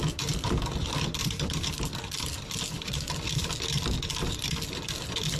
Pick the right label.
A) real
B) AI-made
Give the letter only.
B